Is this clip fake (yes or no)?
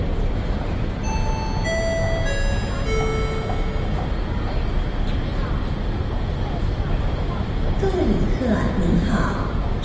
no